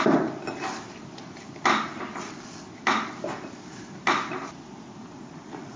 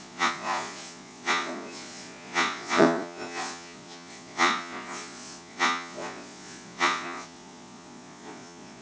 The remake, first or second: second